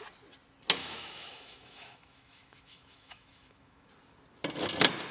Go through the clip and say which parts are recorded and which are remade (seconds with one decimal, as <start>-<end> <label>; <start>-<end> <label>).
0.0-0.8 recorded; 0.8-3.9 remade; 3.9-5.1 recorded